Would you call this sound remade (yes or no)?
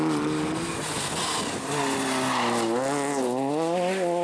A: no